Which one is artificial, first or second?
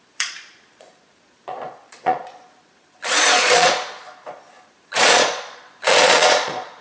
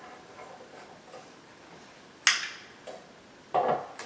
first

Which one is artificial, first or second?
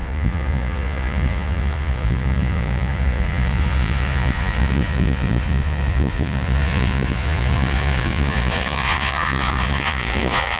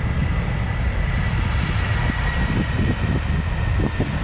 first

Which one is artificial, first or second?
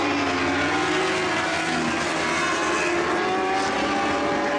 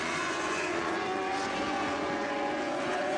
second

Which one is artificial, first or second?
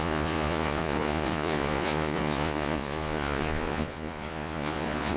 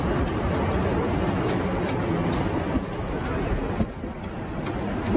first